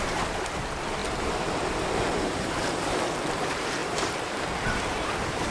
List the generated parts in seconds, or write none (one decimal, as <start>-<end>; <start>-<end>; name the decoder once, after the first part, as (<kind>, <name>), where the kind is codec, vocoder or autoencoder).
0.0-5.5 (vocoder, BigVGAN v2)